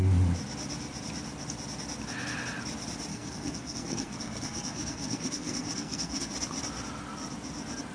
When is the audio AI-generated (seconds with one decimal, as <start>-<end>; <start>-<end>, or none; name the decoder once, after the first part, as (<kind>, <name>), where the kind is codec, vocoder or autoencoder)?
3.1-6.3 (codec, SNAC)